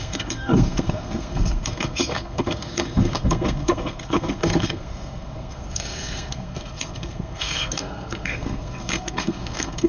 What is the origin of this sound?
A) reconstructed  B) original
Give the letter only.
A